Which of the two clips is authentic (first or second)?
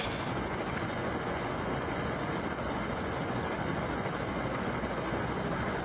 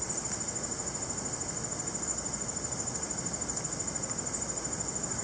second